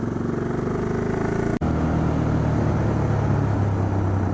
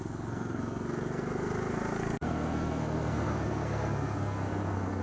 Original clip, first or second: first